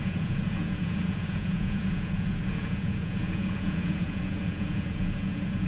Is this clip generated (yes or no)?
yes